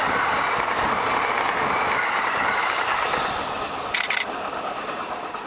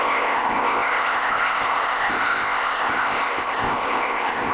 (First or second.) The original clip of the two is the first